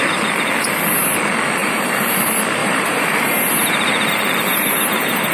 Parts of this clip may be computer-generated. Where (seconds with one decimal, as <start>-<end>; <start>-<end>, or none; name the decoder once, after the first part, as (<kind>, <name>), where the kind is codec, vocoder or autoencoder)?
1.6-2.2 (vocoder, BigVGAN v2); 2.6-4.1; 4.5-5.3